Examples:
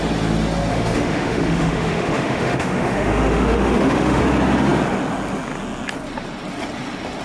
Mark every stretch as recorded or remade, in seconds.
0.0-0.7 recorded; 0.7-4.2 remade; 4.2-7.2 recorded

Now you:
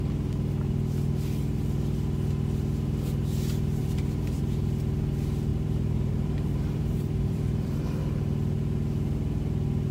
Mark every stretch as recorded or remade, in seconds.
0.0-3.8 recorded; 3.8-4.4 remade; 4.4-5.5 recorded; 5.5-8.0 remade; 8.0-9.9 recorded